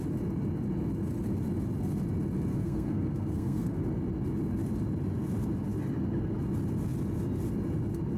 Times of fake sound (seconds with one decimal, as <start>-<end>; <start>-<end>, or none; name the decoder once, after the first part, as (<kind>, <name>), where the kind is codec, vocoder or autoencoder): 2.5-3.8 (codec, SNAC)